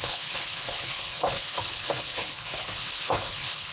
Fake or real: fake